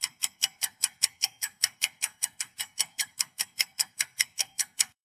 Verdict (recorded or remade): remade